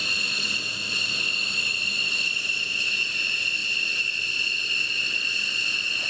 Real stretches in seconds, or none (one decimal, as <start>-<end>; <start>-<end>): 2.9-6.1